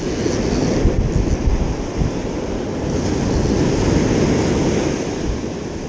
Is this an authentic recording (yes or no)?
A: yes